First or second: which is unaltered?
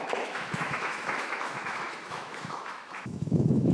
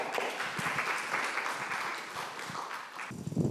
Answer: second